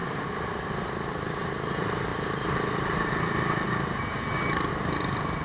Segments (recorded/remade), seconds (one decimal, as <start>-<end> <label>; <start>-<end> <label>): 0.0-0.7 remade; 0.7-2.1 recorded; 2.1-3.1 remade; 3.1-5.4 recorded